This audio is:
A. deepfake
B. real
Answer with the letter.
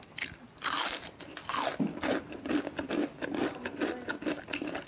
B